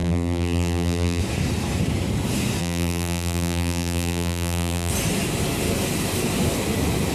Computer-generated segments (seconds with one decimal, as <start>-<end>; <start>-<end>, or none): 0.0-1.2; 2.6-4.9